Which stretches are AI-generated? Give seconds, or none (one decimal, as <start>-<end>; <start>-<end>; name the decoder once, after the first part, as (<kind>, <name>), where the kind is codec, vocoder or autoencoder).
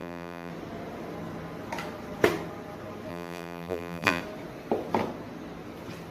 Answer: 0.0-0.5 (vocoder, BigVGAN v2); 3.1-4.2